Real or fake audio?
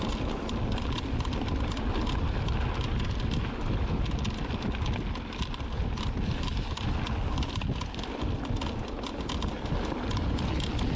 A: real